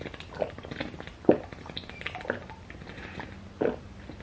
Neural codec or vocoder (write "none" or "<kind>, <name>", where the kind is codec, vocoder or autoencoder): none